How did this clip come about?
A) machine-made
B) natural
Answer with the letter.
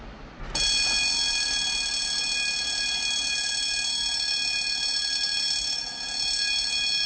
B